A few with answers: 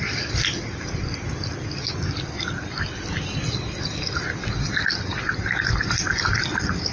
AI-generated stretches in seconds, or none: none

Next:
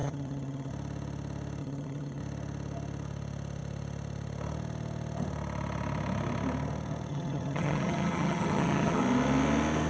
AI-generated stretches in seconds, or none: 0.0-0.7 (vocoder, HiFi-GAN); 1.6-2.2; 7.1-9.0